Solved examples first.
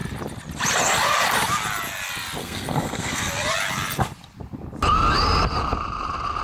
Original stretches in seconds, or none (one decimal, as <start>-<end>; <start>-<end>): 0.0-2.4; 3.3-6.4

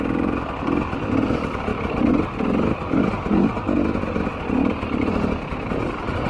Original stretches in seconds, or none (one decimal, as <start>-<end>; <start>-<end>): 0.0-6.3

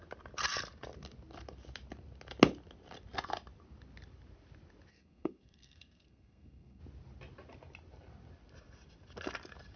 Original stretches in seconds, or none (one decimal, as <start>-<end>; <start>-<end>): 0.0-4.9; 6.8-9.8

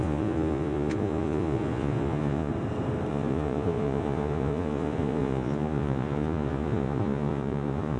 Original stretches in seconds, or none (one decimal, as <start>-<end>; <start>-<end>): 2.5-3.1

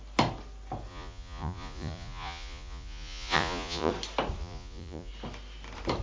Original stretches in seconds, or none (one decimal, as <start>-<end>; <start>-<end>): 0.0-0.9; 3.9-4.4; 5.1-6.0